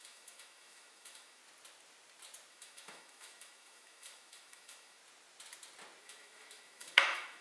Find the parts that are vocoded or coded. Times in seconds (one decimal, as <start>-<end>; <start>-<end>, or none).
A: 0.0-1.4; 2.5-5.0; 6.0-7.4